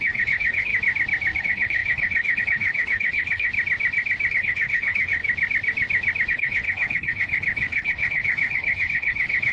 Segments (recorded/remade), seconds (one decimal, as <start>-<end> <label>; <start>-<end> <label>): 0.0-0.7 remade; 0.7-1.4 recorded; 1.4-3.5 remade; 3.5-4.3 recorded; 4.3-5.2 remade; 5.2-6.3 recorded; 6.3-9.5 remade